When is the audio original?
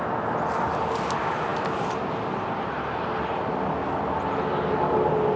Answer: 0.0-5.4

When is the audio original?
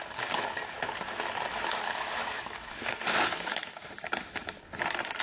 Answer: 0.0-1.5; 4.6-5.2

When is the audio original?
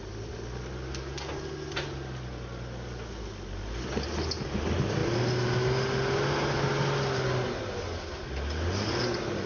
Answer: 0.0-9.5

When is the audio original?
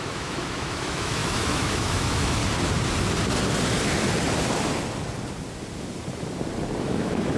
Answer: 2.4-6.8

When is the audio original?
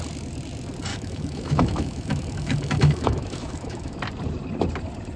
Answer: 0.0-0.9; 4.0-5.2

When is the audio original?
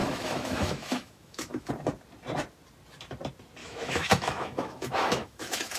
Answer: 1.7-3.6